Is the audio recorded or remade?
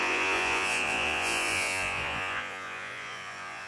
remade